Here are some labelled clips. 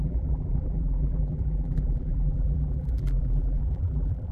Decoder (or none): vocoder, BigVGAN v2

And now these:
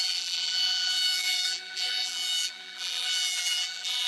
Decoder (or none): vocoder, BigVGAN v2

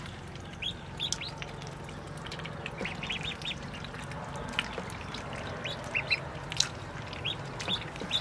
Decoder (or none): none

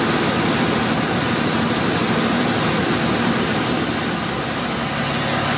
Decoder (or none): none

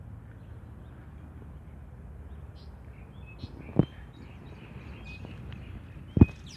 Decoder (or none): none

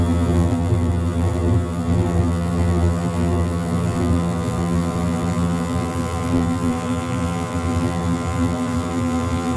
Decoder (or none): vocoder, BigVGAN v2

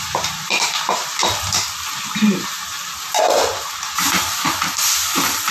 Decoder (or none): vocoder, BigVGAN v2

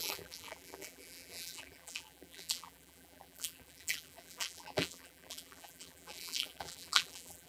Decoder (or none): vocoder, BigVGAN v2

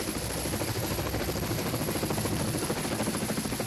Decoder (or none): none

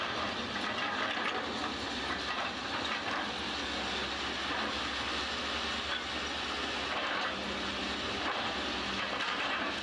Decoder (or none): vocoder, BigVGAN v2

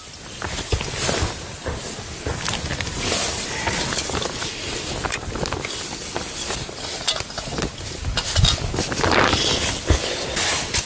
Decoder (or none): none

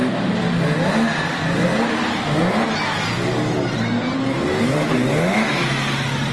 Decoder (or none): none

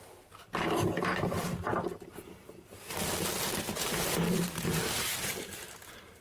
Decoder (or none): vocoder, BigVGAN v2